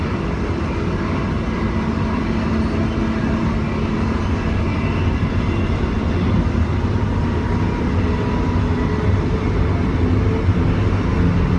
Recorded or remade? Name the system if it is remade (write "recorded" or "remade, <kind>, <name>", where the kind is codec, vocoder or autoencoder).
recorded